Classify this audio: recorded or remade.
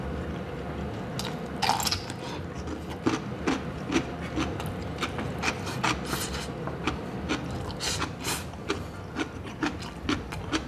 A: recorded